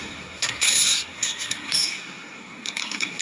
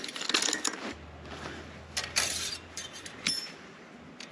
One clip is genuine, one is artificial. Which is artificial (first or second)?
first